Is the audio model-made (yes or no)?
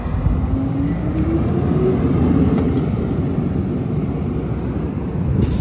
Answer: no